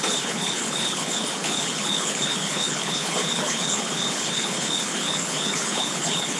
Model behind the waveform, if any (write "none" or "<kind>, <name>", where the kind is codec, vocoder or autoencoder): codec, HILCodec